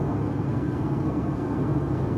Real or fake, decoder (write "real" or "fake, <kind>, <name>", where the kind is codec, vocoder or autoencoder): fake, codec, SNAC